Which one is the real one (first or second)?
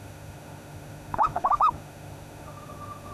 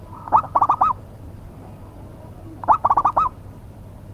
second